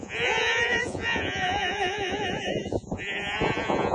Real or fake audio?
fake